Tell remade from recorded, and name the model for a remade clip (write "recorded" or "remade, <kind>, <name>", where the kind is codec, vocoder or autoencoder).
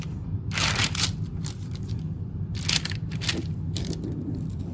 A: remade, vocoder, BigVGAN v2